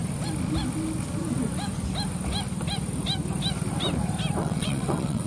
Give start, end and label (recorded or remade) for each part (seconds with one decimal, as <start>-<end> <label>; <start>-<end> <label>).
0.0-4.4 recorded; 4.4-5.3 remade